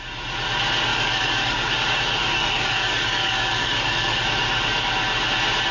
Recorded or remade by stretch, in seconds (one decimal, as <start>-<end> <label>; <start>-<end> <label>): 0.0-0.9 recorded; 0.9-1.7 remade; 1.7-2.2 recorded; 2.2-4.2 remade; 4.2-5.7 recorded